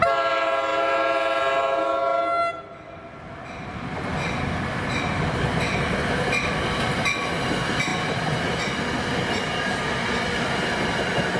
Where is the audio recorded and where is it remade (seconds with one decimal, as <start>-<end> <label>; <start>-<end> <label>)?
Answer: 0.0-11.4 recorded